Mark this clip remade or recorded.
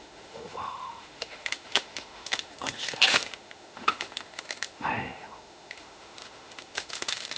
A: remade